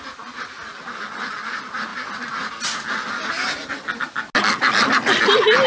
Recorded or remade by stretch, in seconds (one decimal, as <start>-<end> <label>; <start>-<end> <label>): 0.0-5.7 recorded